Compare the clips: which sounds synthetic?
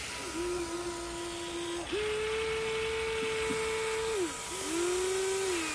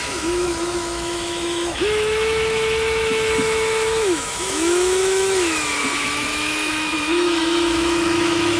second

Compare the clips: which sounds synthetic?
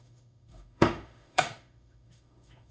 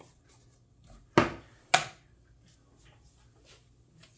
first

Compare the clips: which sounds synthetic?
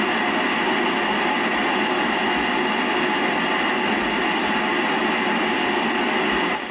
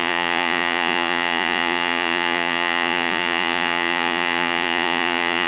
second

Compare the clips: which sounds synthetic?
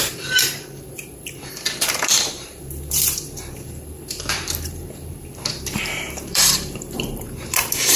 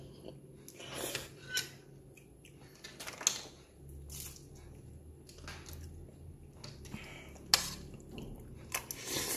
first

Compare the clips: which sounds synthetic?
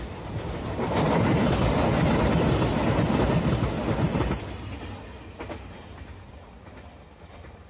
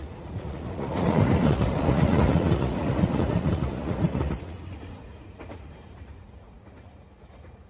second